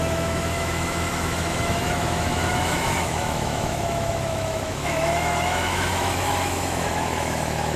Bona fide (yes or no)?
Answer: no